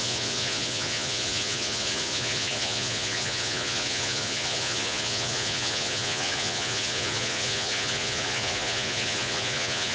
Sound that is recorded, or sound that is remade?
remade